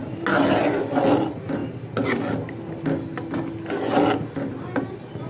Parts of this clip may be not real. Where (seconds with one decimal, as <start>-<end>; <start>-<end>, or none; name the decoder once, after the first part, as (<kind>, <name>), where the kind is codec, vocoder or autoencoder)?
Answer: none